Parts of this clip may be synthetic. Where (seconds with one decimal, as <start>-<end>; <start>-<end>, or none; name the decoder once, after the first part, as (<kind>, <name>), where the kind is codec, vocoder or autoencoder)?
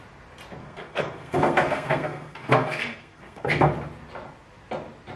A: 0.6-3.7 (codec, SNAC)